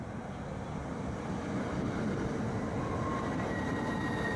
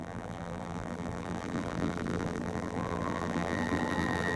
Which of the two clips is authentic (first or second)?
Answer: first